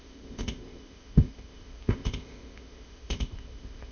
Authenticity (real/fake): fake